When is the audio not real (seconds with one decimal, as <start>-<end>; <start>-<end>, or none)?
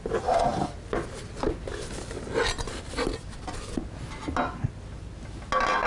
none